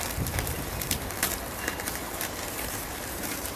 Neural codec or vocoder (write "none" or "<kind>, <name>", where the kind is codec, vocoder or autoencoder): vocoder, BigVGAN v2